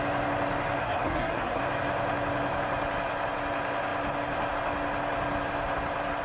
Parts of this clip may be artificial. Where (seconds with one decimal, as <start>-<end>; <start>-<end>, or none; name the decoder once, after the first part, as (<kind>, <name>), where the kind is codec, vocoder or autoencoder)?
0.8-1.6 (codec, SNAC)